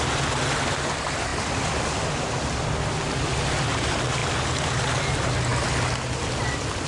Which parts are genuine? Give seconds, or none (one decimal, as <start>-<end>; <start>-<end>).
0.0-6.9